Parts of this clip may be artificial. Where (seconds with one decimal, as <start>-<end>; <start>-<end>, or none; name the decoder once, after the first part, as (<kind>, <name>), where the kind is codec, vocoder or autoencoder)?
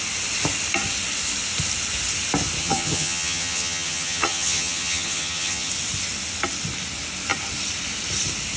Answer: 2.6-5.7 (vocoder, HiFi-GAN)